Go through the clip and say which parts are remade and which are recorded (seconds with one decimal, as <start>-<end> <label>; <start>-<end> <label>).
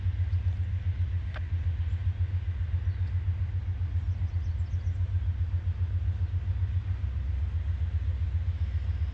0.0-9.1 recorded